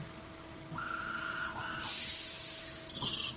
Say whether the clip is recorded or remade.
recorded